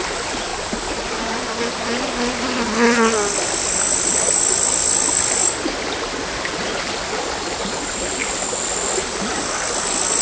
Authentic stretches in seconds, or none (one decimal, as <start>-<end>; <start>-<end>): 0.0-10.2